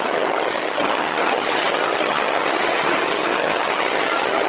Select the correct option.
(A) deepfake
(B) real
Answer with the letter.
A